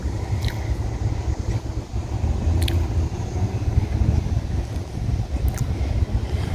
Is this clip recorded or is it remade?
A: recorded